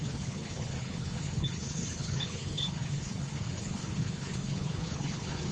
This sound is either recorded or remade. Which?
remade